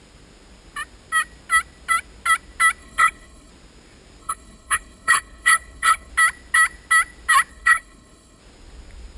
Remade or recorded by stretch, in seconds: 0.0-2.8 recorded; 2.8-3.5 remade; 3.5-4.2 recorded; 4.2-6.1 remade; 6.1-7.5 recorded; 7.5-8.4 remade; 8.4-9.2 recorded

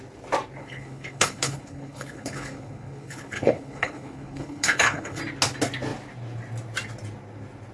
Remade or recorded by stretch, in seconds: 0.0-0.6 recorded; 0.6-5.2 remade; 5.2-7.7 recorded

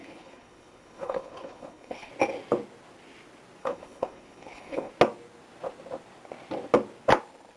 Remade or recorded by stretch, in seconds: 0.0-2.1 remade; 2.1-3.6 recorded; 3.6-4.9 remade; 4.9-7.6 recorded